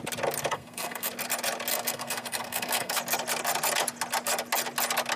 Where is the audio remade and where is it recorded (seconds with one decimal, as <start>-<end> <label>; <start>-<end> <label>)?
0.0-0.5 recorded; 0.5-1.1 remade; 1.1-1.7 recorded; 1.7-3.0 remade; 3.0-5.2 recorded